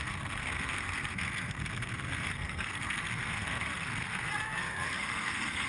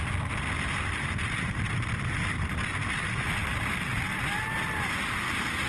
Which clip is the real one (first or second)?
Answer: second